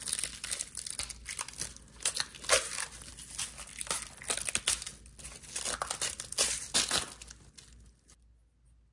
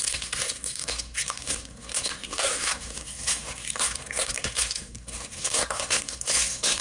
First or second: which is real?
first